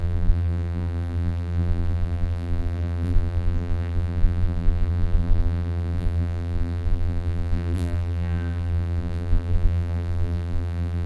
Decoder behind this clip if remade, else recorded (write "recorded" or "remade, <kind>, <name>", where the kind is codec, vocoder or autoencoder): remade, vocoder, BigVGAN v2